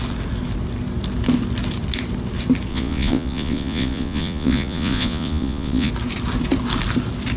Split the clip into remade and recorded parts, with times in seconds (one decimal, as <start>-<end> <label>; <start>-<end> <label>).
0.0-2.7 recorded; 2.7-5.9 remade; 5.9-7.4 recorded